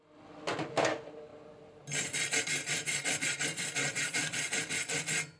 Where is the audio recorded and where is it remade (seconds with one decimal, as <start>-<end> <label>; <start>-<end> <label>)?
0.0-3.8 recorded; 3.8-4.5 remade; 4.5-5.4 recorded